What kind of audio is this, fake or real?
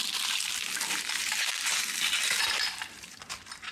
real